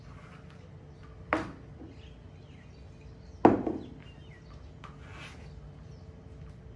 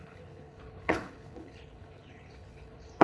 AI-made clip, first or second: second